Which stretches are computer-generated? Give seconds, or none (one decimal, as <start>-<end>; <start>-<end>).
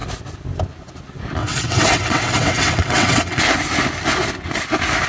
1.4-3.4